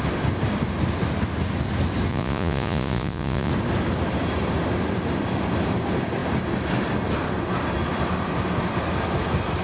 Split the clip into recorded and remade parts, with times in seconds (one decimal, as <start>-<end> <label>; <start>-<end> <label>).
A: 0.0-2.1 recorded; 2.1-3.5 remade; 3.5-9.6 recorded